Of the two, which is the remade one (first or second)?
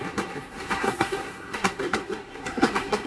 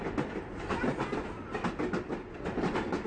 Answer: first